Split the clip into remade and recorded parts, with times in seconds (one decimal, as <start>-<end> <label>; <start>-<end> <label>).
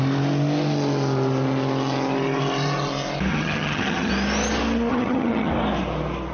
0.0-3.3 recorded; 3.3-4.1 remade; 4.1-4.9 recorded; 4.9-5.5 remade; 5.5-6.3 recorded